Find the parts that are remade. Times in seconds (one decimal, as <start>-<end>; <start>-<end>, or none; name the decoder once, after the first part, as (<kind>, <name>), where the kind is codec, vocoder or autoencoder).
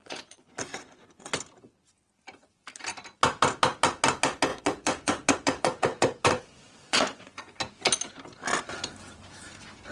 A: 0.0-1.3 (vocoder, Vocos); 4.5-7.6